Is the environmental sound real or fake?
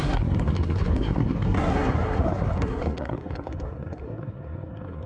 fake